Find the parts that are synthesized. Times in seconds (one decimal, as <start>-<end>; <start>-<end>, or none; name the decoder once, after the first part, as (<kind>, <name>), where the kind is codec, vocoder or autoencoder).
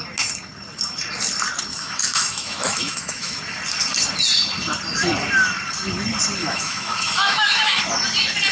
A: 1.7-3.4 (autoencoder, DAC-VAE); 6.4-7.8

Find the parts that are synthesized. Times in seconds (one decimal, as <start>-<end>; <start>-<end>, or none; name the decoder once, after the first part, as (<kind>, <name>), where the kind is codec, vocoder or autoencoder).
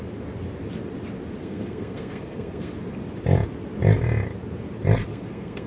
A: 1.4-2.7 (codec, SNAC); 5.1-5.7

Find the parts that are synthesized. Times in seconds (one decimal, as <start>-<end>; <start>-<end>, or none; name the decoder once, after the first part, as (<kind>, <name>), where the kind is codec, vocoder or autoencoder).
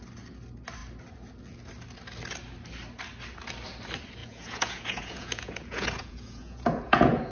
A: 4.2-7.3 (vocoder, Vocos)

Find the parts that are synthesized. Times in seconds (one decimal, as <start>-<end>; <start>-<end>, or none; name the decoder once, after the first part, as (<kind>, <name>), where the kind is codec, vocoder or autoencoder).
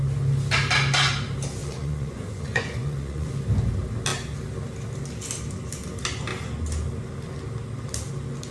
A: 1.6-3.3 (vocoder, Vocos)